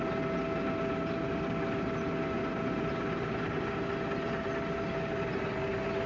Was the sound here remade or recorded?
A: recorded